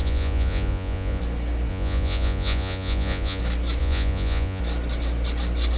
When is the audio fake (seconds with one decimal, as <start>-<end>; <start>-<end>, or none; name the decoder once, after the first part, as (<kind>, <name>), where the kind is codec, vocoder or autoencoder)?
0.0-1.2 (vocoder, Vocos); 1.7-3.4; 3.8-4.6